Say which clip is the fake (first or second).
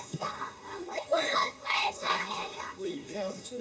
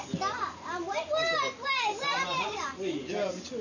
first